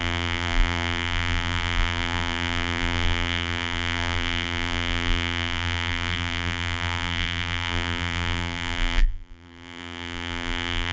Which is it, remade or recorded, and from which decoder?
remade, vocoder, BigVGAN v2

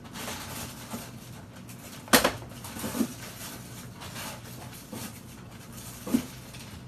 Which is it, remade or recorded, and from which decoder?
recorded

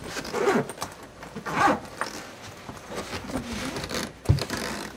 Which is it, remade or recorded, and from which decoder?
recorded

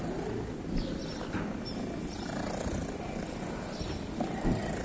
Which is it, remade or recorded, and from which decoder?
recorded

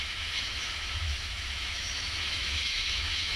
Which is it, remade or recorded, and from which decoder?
remade, autoencoder, DAC-VAE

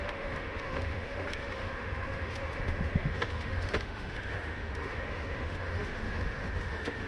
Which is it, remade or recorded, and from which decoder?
remade, autoencoder, DAC-VAE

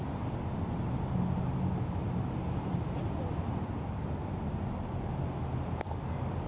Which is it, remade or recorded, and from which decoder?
recorded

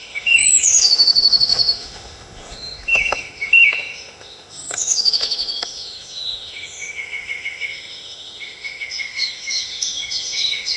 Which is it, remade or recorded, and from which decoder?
remade, autoencoder, DAC-VAE